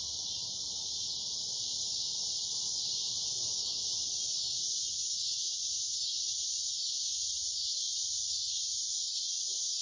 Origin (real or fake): real